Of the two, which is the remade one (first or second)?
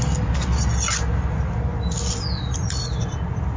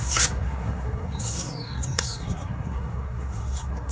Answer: second